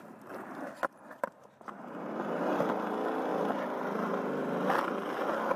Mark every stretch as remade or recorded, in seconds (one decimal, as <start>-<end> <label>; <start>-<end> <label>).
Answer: 0.0-5.6 recorded